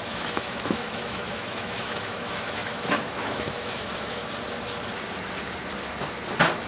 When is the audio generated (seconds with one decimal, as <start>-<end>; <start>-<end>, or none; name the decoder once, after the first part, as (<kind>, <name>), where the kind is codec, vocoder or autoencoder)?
0.0-4.2 (autoencoder, DAC-VAE)